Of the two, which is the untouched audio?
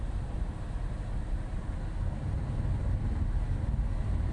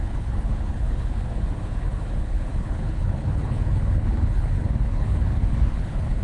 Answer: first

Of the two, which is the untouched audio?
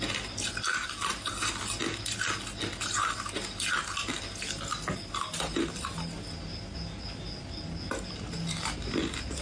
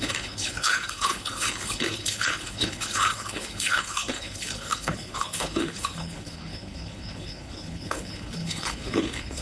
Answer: first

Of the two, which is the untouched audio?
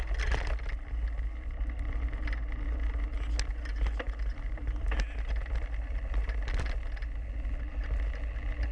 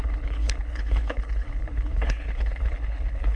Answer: first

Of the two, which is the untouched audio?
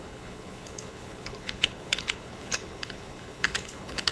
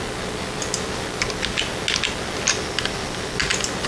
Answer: second